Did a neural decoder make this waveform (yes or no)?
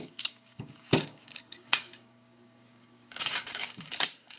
yes